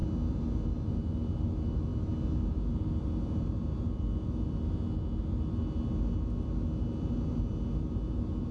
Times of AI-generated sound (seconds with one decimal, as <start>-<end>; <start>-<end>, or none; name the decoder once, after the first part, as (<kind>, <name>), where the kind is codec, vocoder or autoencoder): none